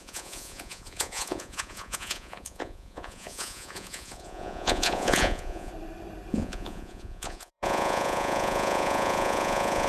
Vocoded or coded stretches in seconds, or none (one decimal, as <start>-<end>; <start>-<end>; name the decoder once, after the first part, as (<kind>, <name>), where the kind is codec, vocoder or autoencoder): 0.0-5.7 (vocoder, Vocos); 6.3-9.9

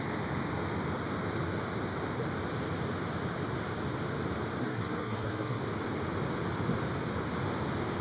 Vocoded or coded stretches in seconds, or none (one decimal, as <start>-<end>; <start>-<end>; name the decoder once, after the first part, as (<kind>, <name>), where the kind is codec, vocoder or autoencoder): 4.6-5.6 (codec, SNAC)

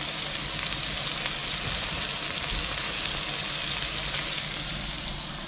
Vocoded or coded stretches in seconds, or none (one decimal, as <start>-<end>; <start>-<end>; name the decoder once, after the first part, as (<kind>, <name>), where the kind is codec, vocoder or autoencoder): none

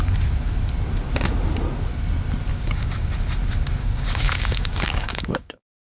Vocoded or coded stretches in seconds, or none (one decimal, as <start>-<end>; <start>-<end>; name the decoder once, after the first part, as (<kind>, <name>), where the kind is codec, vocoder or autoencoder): 2.5-3.1 (codec, DAC); 3.8-5.9

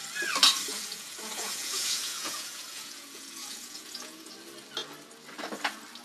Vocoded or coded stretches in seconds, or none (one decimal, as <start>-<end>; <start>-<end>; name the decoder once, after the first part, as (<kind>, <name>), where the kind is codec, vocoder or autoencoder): 0.7-4.3 (vocoder, Vocos)

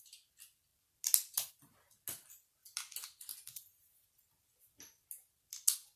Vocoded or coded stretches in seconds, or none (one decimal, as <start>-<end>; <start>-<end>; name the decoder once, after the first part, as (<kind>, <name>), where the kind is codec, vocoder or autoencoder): 4.4-5.0 (vocoder, BigVGAN v2)

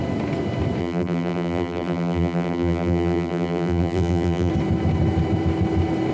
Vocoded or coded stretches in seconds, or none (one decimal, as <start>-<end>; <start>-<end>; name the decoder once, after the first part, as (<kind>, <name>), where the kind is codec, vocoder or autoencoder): 0.8-4.5 (vocoder, BigVGAN v2)

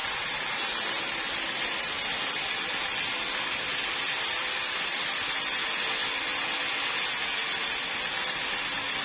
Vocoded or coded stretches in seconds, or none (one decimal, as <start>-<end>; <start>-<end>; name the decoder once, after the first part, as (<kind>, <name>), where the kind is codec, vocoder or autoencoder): none